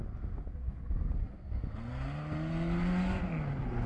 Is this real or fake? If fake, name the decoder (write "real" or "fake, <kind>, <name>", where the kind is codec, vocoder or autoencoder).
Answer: real